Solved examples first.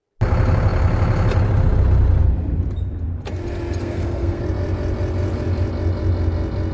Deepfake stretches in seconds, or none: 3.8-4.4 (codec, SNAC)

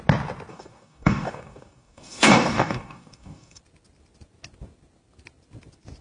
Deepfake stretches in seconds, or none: 0.5-3.6 (codec, DAC)

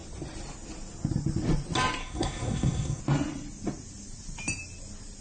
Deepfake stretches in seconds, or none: 2.0-3.0 (codec, SNAC)